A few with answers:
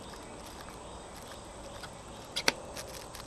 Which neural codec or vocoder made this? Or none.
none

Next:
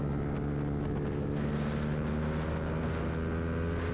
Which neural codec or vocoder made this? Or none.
none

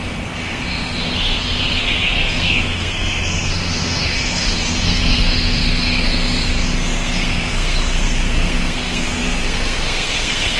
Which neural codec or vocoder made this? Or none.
codec, SNAC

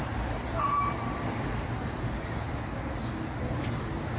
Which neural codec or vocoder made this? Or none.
none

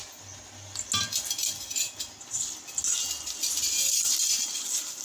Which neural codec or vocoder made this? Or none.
none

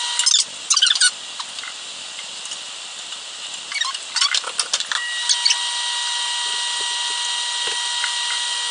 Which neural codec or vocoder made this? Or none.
none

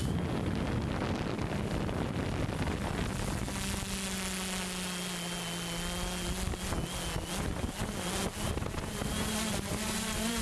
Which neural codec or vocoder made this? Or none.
none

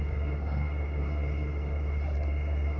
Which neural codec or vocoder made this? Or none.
codec, SNAC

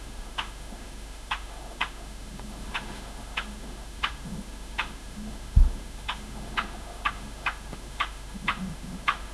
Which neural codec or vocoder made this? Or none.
autoencoder, DAC-VAE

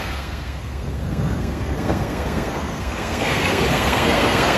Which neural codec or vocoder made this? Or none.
codec, SNAC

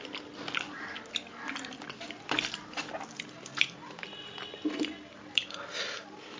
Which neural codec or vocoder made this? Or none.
none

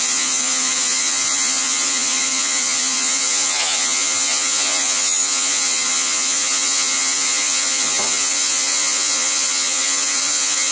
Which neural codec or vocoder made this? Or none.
vocoder, Vocos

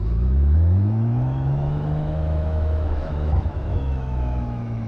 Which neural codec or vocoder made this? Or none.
autoencoder, DAC-VAE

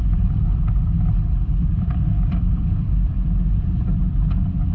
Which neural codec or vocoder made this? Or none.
vocoder, BigVGAN v2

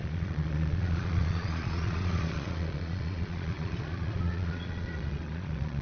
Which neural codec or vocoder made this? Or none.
vocoder, Vocos